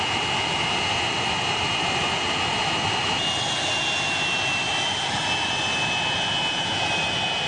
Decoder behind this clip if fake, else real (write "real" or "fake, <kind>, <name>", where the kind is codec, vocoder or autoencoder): real